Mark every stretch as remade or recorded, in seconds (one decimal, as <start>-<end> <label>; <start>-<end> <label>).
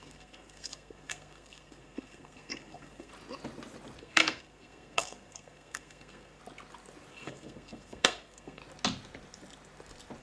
0.0-3.1 remade; 3.1-4.0 recorded; 4.0-6.4 remade; 6.4-7.1 recorded; 7.1-8.6 remade; 8.6-10.2 recorded